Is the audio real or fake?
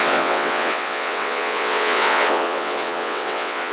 fake